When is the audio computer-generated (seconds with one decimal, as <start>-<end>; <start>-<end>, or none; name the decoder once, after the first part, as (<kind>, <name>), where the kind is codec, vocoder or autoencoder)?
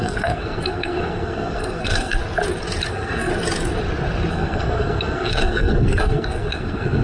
0.0-2.2 (codec, SNAC); 2.9-3.3; 4.3-7.0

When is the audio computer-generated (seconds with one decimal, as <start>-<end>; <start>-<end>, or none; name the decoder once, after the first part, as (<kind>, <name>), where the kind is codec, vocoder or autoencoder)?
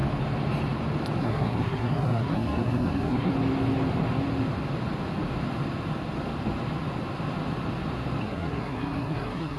1.2-3.3 (codec, SNAC); 8.2-9.6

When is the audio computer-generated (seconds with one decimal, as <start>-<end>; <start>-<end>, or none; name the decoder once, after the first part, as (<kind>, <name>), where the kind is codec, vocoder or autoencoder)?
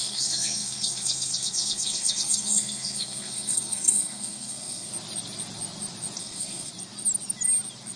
0.0-4.9 (codec, SNAC); 6.2-6.7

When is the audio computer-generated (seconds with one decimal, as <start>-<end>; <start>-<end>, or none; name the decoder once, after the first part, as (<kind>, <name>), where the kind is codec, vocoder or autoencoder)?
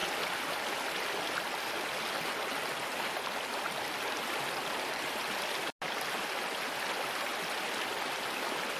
none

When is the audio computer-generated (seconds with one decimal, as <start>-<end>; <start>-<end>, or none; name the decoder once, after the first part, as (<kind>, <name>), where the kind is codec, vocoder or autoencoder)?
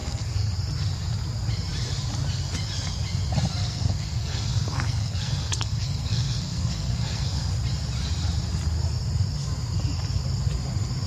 0.0-0.5 (codec, SNAC); 3.6-7.5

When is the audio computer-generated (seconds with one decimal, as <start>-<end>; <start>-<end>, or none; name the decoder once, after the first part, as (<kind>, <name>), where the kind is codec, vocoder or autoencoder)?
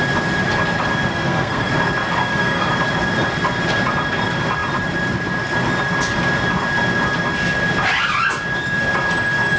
1.1-1.7 (codec, SNAC); 2.2-2.7